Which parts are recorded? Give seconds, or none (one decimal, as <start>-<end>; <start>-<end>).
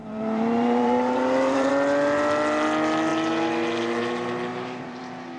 1.7-4.5; 5.0-5.4